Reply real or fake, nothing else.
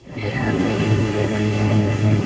fake